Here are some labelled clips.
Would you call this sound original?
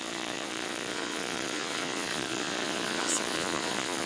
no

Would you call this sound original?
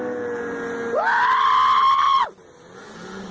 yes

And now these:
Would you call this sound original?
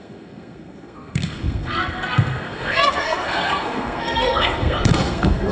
no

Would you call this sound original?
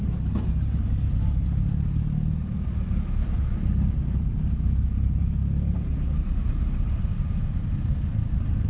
yes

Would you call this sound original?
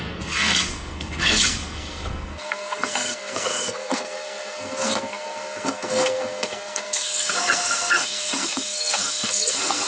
no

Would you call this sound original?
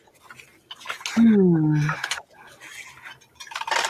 yes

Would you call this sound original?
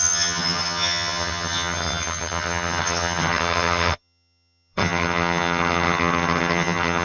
no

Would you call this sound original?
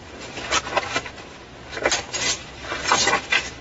yes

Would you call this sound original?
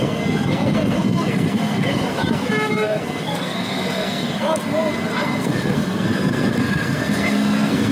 no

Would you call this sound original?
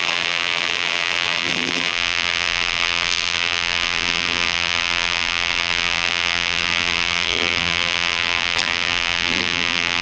no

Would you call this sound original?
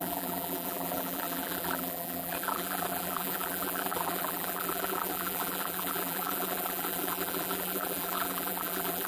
no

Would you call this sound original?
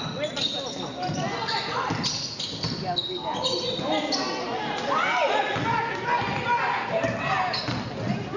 yes